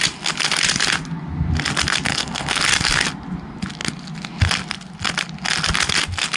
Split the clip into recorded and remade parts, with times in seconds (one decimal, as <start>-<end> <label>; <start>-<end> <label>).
0.0-2.1 recorded; 2.1-2.6 remade; 2.6-6.4 recorded